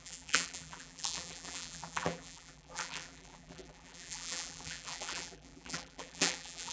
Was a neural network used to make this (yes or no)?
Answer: yes